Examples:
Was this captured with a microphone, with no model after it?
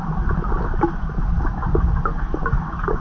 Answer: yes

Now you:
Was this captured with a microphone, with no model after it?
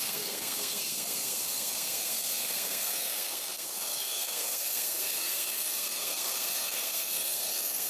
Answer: no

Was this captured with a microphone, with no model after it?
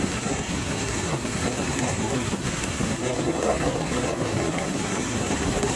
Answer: no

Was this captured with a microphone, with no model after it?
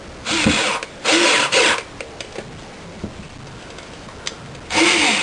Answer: yes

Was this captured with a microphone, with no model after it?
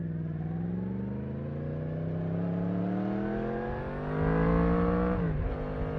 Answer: yes